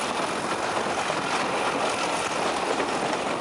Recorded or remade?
recorded